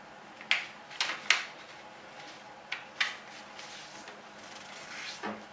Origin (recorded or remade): recorded